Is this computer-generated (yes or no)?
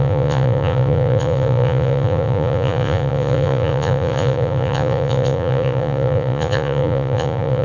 yes